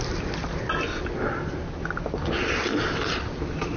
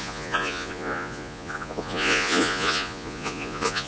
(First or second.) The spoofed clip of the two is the second